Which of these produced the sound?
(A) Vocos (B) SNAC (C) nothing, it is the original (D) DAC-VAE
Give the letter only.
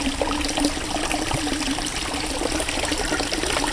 C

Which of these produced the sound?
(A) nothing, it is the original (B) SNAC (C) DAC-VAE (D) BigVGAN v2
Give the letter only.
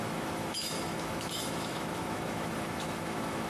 C